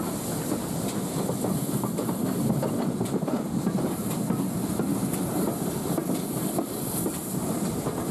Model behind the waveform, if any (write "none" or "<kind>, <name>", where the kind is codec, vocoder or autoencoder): none